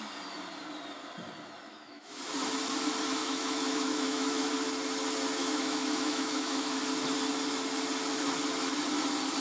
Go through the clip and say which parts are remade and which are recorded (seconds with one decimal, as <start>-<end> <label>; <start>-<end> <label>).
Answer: 0.0-1.7 recorded; 1.7-2.2 remade; 2.2-3.2 recorded; 3.2-4.5 remade; 4.5-5.4 recorded; 5.4-6.8 remade; 6.8-9.4 recorded